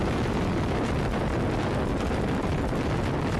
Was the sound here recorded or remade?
remade